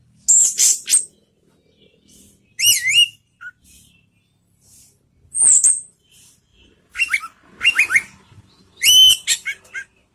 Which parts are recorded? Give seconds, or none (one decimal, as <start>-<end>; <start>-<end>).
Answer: 0.0-10.1